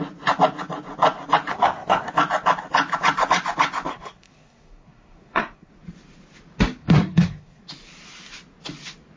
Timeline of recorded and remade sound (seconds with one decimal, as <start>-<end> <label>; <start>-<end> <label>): 0.0-1.5 recorded; 1.5-2.1 remade; 2.1-3.9 recorded; 3.9-5.7 remade; 5.7-6.8 recorded; 6.8-7.6 remade; 7.6-9.2 recorded